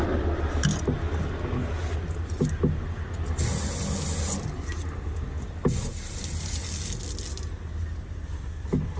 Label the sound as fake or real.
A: real